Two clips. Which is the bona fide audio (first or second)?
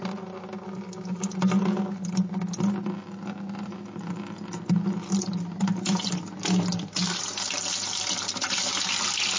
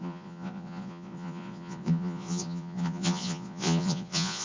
first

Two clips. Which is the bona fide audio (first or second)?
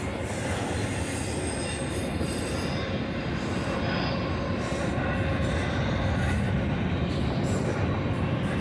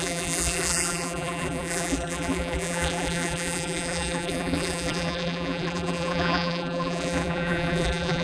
first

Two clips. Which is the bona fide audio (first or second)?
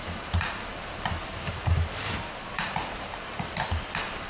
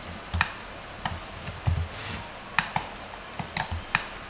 second